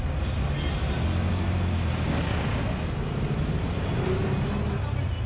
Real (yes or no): yes